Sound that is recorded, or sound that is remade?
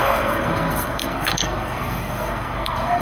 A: remade